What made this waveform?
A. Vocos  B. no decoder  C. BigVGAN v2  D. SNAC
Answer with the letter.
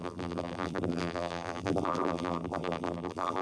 C